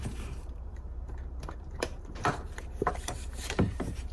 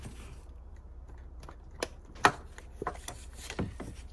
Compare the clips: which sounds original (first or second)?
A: second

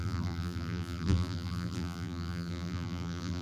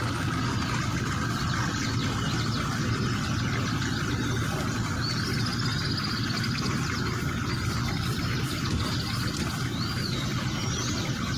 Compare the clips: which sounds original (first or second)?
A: second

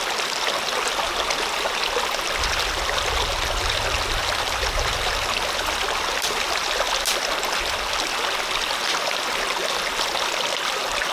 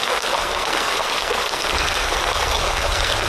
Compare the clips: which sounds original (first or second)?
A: first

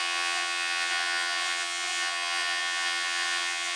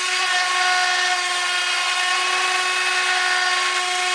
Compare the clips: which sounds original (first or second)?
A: second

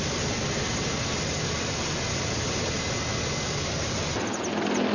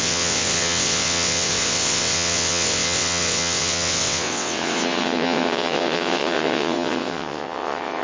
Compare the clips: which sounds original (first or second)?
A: first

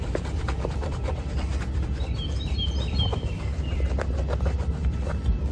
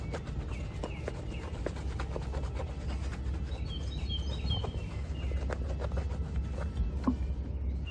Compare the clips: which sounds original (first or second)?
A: second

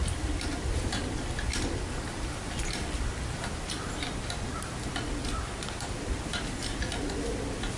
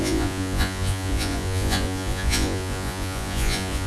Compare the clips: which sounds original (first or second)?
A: first